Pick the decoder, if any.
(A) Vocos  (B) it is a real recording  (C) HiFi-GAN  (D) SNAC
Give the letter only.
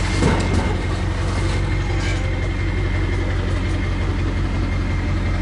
B